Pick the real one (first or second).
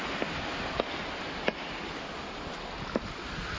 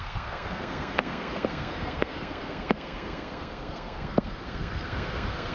first